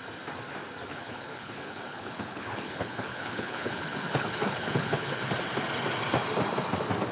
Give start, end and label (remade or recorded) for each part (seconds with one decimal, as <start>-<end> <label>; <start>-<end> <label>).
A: 0.0-0.9 recorded; 0.9-5.2 remade; 5.2-7.1 recorded

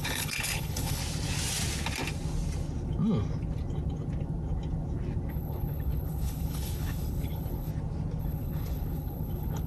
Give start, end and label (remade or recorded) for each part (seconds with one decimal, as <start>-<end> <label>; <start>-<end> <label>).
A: 0.0-1.0 remade; 1.0-5.3 recorded; 5.3-7.7 remade; 7.7-8.2 recorded; 8.2-9.7 remade

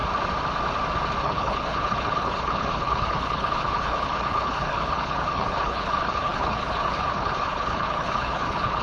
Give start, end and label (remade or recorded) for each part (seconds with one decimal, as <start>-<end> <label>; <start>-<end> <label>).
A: 0.0-1.2 recorded; 1.2-8.8 remade

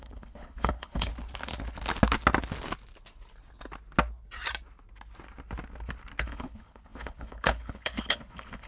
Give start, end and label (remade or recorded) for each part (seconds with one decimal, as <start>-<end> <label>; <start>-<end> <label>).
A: 0.0-1.1 remade; 1.1-6.2 recorded; 6.2-8.7 remade

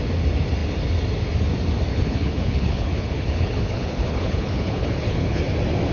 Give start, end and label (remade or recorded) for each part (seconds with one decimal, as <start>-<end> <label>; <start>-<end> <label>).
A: 0.0-1.9 recorded; 1.9-5.4 remade; 5.4-5.9 recorded

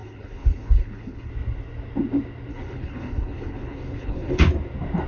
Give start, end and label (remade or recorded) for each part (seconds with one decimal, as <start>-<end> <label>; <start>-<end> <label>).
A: 0.0-1.3 remade; 1.3-2.5 recorded; 2.5-4.4 remade; 4.4-5.1 recorded